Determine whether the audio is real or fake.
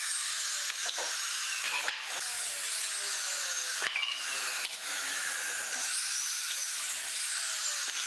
fake